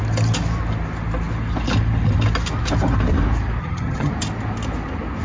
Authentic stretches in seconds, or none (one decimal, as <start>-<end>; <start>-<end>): 0.0-3.6; 4.1-5.2